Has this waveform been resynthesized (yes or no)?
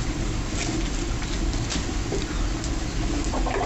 no